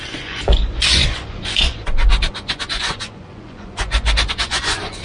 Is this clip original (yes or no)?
no